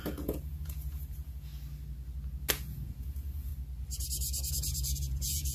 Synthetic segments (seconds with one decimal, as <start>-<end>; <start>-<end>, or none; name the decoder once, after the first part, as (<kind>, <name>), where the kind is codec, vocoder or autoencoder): 0.0-1.5 (vocoder, Vocos); 2.5-3.5; 4.5-5.5